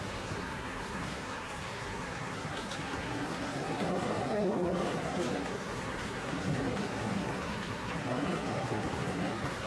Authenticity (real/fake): fake